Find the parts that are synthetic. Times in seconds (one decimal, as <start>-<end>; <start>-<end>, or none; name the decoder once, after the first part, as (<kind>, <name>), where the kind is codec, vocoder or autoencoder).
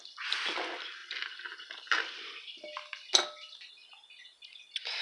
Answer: none